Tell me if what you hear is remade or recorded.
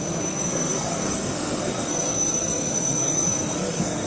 remade